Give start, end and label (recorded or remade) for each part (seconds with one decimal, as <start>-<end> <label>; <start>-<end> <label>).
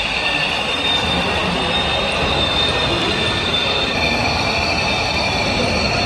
0.0-6.1 recorded